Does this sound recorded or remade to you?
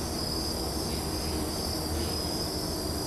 recorded